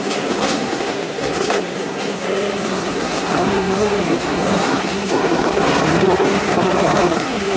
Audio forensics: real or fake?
fake